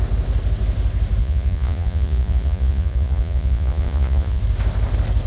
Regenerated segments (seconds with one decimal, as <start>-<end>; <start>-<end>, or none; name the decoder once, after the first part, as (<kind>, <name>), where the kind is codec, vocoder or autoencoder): 1.2-4.4 (vocoder, Vocos)